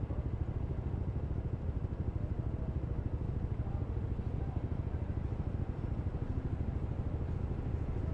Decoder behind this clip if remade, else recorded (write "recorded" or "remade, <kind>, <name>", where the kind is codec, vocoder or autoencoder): recorded